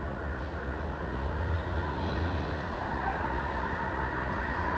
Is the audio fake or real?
fake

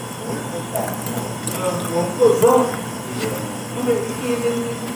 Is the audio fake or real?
real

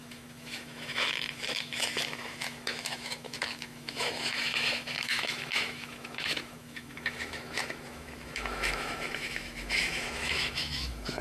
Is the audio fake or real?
fake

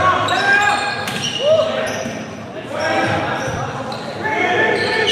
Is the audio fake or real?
real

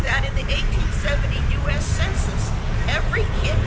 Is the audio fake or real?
fake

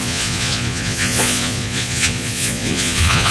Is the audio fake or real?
fake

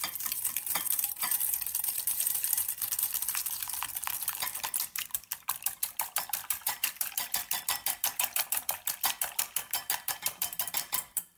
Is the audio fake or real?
fake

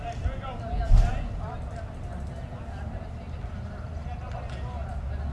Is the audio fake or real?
real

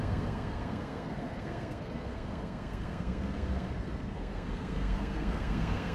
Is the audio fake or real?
fake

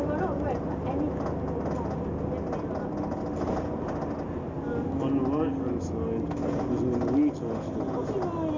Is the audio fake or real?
real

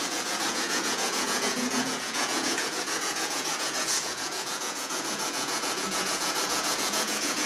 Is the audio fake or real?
fake